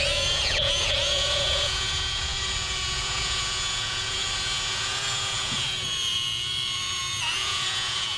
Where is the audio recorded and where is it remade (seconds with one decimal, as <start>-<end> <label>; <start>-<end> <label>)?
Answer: 0.0-8.2 remade